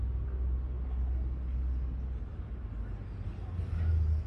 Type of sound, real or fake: real